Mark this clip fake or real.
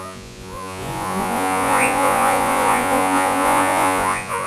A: fake